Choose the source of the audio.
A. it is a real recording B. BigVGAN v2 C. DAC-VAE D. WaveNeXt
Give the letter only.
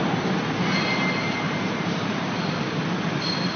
A